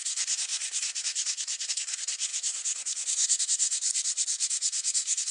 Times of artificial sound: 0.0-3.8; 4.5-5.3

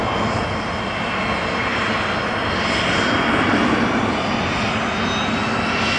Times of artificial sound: none

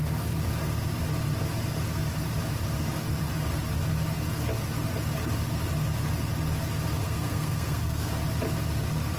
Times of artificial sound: 7.0-8.1

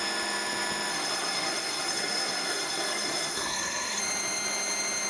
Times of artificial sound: 0.9-4.0

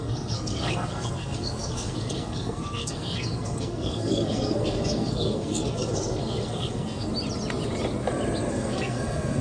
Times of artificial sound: 0.0-7.1; 8.5-9.4

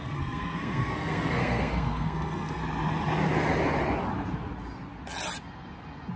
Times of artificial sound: 0.0-2.6

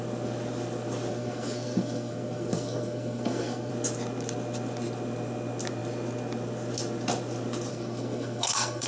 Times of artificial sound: 1.1-3.7; 7.7-8.9

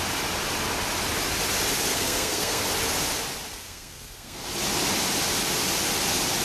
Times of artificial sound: 1.9-2.6; 3.5-4.4